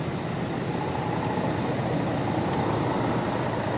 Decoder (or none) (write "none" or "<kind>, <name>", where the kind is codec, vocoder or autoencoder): none